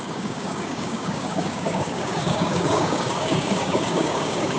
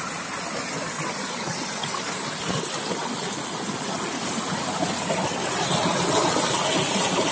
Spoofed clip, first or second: first